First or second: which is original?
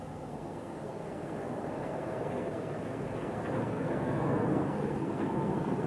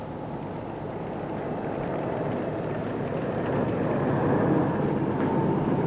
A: second